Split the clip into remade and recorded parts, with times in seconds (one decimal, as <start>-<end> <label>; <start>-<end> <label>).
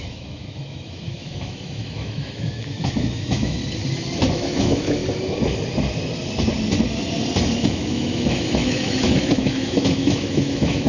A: 0.0-3.6 remade; 3.6-4.3 recorded; 4.3-5.0 remade; 5.0-7.6 recorded; 7.6-10.9 remade